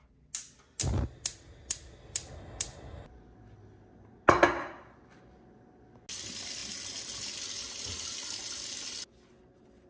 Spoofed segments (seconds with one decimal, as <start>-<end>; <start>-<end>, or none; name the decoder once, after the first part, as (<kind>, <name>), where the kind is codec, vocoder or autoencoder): none